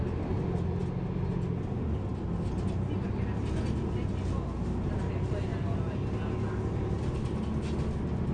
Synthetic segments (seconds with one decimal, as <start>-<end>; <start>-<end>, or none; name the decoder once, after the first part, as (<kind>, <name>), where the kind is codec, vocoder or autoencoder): none